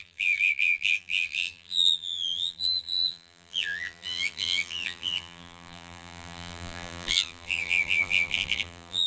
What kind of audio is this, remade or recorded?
remade